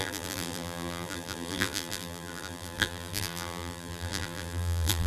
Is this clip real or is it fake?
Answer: fake